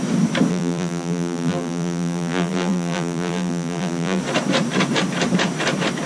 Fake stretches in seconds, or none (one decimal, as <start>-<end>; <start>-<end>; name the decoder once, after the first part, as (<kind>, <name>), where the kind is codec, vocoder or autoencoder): 0.5-4.2 (vocoder, BigVGAN v2)